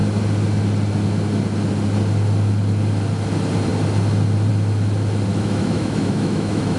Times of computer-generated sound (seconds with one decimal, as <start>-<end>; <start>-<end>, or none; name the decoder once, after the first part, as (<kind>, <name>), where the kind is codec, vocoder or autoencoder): 5.3-6.8 (autoencoder, DAC-VAE)